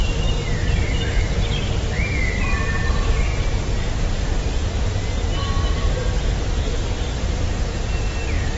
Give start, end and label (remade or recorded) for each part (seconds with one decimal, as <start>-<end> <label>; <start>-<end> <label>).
0.0-0.4 recorded; 0.4-1.0 remade; 1.0-6.5 recorded; 6.5-7.5 remade; 7.5-8.6 recorded